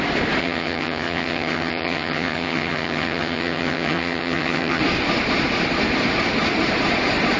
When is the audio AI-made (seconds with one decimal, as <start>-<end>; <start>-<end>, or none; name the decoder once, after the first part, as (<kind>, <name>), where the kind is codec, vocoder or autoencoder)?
0.4-4.8 (vocoder, HiFi-GAN)